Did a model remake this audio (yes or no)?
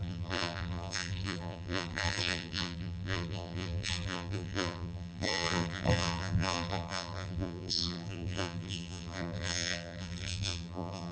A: yes